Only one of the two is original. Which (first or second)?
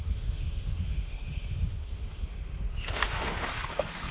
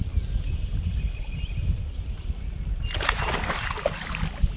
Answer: second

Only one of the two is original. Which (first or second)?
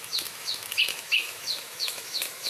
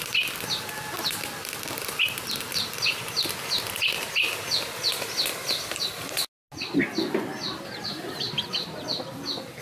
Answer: second